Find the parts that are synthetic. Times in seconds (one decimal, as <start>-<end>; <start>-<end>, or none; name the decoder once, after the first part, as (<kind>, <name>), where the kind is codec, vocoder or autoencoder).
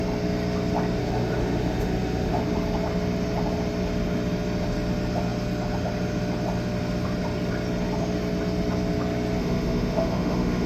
1.0-2.4 (autoencoder, DAC-VAE); 9.4-10.7